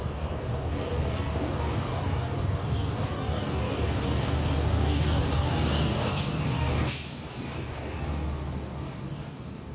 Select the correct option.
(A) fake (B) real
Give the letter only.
A